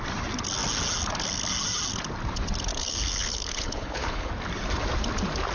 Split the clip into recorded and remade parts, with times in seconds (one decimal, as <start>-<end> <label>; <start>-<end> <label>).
0.0-2.7 recorded; 2.7-4.3 remade; 4.3-5.5 recorded